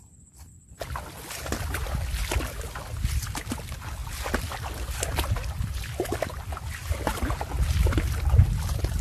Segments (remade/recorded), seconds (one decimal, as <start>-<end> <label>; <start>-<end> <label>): 0.0-9.0 recorded